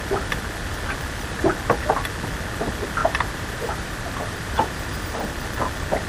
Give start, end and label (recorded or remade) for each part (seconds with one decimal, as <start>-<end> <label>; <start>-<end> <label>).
0.0-3.0 recorded; 3.0-5.3 remade; 5.3-6.1 recorded